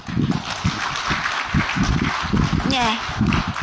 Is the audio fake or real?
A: real